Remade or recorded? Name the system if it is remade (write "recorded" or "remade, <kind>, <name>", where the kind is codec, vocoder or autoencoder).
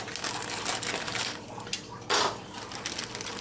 recorded